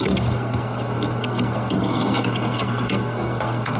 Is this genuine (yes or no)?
no